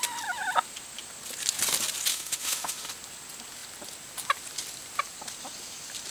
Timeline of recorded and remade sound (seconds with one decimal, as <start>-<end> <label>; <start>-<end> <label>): 0.0-2.1 recorded; 2.1-2.9 remade; 2.9-6.1 recorded